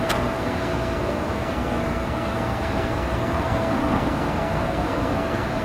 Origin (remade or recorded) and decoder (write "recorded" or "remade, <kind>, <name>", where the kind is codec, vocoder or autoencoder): remade, codec, SNAC